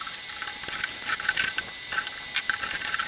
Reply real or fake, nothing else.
real